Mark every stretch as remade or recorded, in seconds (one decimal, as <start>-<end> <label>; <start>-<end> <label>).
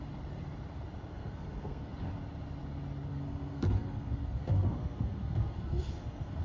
0.0-1.1 recorded; 1.1-1.9 remade; 1.9-3.1 recorded; 3.1-6.4 remade